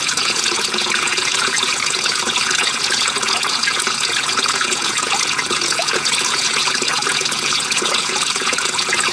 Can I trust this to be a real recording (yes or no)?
no